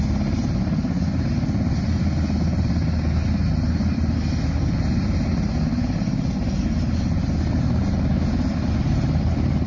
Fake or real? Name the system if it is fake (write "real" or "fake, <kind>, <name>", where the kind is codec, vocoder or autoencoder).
real